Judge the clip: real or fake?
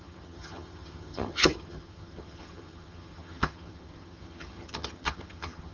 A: fake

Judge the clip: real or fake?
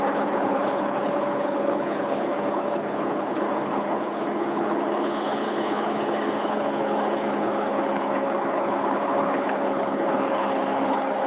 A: fake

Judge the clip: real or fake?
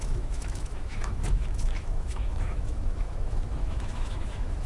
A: fake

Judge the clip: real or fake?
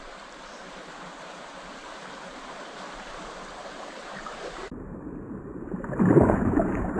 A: fake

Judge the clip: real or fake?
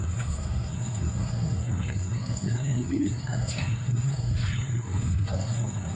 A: fake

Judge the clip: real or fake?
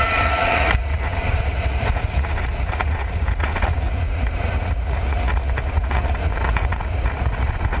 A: fake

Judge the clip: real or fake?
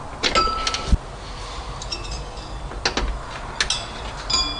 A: real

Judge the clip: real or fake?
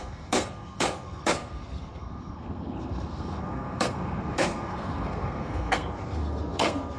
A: fake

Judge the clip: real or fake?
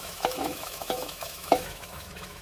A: fake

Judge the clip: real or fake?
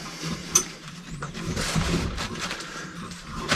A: fake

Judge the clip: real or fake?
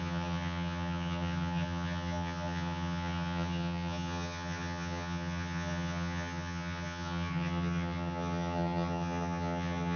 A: fake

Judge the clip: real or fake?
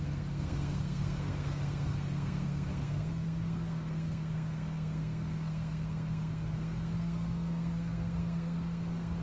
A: fake